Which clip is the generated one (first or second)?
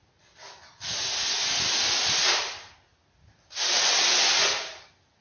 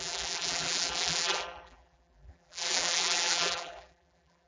second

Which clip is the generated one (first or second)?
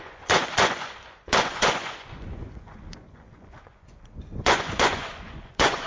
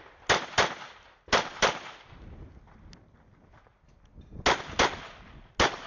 first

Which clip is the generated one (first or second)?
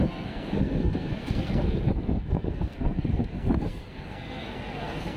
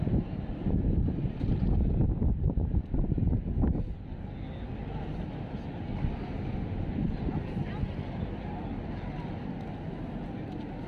first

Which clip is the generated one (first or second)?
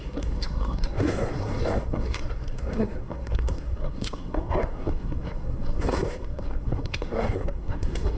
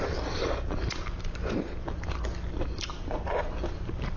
first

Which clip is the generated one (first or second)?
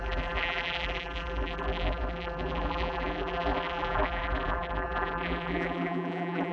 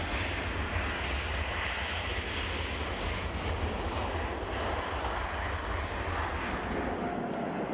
first